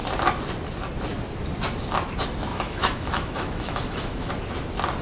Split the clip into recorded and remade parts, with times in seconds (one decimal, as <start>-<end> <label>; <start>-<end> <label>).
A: 0.0-2.5 recorded; 2.5-4.3 remade; 4.3-5.0 recorded

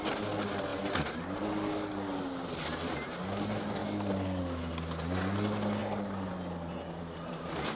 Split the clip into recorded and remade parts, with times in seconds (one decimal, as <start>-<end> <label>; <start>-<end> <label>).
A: 0.0-7.8 recorded

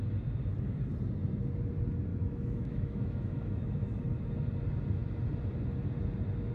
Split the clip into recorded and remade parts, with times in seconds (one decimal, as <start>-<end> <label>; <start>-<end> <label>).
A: 0.0-2.1 recorded; 2.1-4.0 remade; 4.0-6.5 recorded